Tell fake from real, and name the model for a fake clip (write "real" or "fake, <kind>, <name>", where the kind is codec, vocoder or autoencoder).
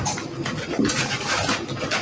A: real